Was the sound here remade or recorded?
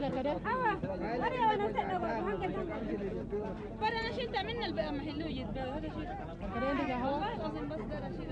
recorded